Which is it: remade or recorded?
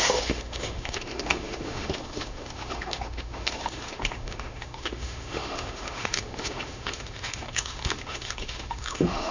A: remade